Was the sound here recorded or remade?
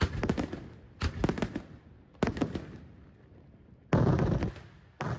recorded